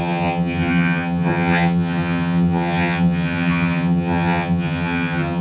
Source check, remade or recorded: remade